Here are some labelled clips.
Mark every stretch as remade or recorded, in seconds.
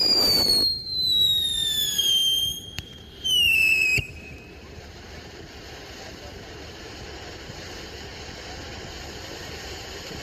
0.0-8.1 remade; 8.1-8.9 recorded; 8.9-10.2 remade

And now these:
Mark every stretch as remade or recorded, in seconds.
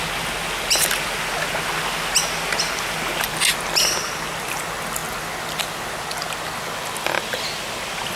0.0-8.2 recorded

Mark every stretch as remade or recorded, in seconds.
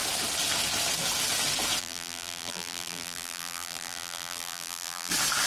0.0-1.8 recorded; 1.8-5.1 remade; 5.1-5.5 recorded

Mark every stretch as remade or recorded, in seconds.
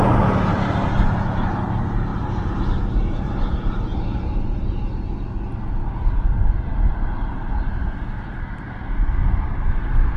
0.0-0.5 recorded; 0.5-1.5 remade; 1.5-2.1 recorded; 2.1-4.4 remade; 4.4-10.2 recorded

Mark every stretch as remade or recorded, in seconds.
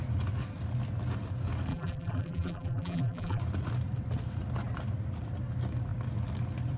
0.0-1.7 recorded; 1.7-3.4 remade; 3.4-6.8 recorded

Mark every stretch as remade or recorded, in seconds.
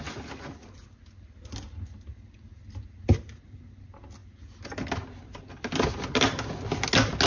0.0-7.3 recorded